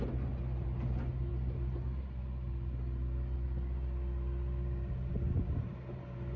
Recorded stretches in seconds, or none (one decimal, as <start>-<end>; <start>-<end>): 0.0-6.4